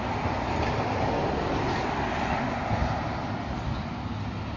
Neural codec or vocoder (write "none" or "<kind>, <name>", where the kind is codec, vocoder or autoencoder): none